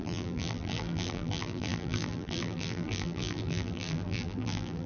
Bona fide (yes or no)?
no